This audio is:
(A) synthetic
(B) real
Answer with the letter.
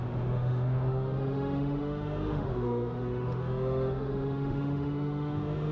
A